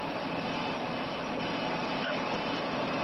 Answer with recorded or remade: recorded